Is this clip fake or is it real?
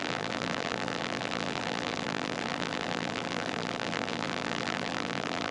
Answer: fake